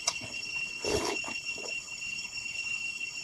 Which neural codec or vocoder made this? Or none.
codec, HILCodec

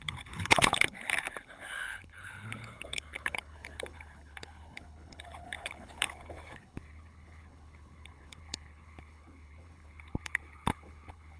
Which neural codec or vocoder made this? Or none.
codec, HILCodec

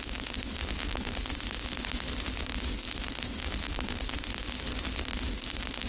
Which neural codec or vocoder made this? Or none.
none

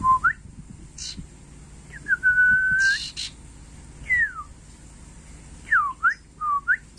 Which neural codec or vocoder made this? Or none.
none